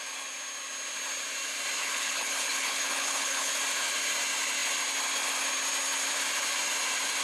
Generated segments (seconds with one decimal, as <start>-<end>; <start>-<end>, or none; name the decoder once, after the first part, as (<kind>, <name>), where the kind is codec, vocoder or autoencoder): 1.8-3.5 (codec, HILCodec)